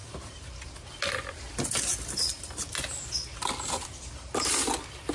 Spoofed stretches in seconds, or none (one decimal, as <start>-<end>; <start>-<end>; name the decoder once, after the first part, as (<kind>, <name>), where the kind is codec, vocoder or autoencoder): none